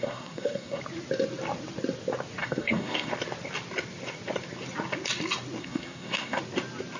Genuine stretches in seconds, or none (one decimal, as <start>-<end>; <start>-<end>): 0.8-2.4; 3.1-5.6; 6.4-7.0